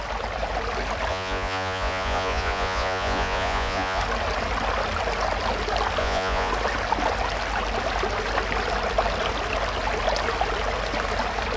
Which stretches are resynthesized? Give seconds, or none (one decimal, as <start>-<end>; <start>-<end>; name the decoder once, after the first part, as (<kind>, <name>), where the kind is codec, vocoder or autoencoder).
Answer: 1.1-4.0 (vocoder, Vocos); 6.0-6.5